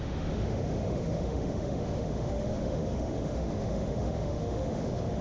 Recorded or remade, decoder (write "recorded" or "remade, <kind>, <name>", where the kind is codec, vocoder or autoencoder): remade, autoencoder, DAC-VAE